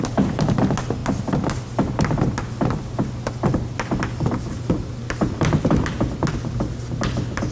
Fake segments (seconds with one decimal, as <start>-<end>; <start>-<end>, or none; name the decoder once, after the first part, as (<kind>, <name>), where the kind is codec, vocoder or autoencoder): none